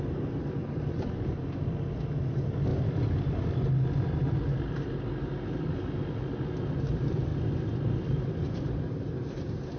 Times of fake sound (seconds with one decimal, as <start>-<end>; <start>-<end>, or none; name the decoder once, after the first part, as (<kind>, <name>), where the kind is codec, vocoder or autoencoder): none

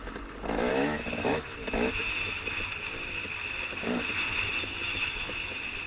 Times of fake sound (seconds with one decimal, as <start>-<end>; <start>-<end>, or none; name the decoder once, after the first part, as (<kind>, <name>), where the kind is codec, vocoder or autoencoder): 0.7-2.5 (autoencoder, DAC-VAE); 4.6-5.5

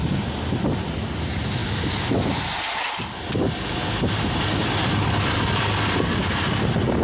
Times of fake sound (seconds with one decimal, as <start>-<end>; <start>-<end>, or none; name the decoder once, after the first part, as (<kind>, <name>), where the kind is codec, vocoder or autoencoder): none

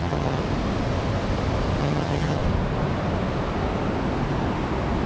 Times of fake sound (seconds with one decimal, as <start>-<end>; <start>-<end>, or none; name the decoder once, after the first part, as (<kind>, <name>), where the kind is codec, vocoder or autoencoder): 0.0-0.4 (vocoder, HiFi-GAN); 1.8-2.4

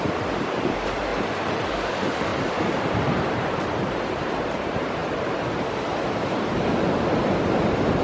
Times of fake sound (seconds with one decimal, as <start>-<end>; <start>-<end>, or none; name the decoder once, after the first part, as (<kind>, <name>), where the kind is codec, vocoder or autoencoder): 0.0-1.1 (vocoder, BigVGAN v2); 1.9-2.3; 3.3-8.0

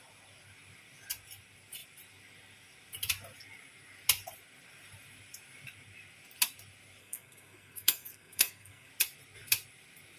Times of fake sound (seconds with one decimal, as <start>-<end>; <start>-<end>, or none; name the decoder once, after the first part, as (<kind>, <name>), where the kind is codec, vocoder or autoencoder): 7.0-8.9 (codec, SNAC)

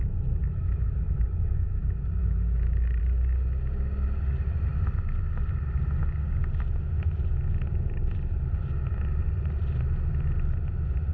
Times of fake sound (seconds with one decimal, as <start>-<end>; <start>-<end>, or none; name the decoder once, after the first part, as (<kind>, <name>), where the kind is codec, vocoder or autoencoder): 0.5-1.8 (autoencoder, DAC-VAE); 2.2-3.0